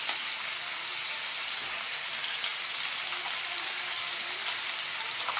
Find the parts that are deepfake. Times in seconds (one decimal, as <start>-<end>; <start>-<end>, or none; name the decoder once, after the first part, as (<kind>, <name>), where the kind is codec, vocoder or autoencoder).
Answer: 1.0-2.1 (vocoder, BigVGAN v2)